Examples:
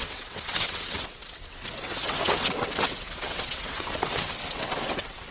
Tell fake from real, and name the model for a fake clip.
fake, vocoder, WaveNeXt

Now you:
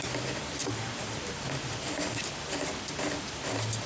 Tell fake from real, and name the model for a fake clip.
real